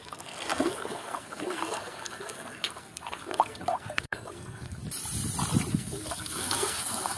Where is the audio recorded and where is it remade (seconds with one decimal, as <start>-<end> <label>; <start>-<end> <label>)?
0.0-4.8 remade; 4.8-5.7 recorded; 5.7-7.2 remade